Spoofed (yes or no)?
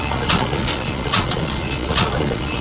yes